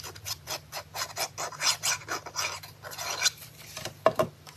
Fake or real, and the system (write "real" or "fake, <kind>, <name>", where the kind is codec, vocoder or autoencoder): real